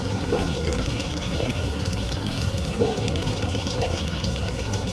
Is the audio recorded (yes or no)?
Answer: no